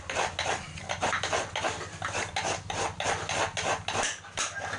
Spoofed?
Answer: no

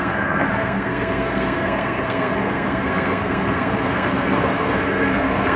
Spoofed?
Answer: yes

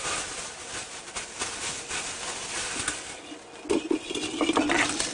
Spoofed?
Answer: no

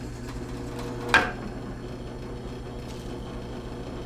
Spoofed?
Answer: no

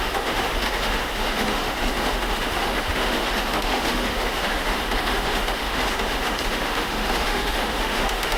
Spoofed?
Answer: yes